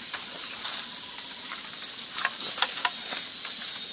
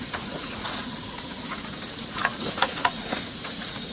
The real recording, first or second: first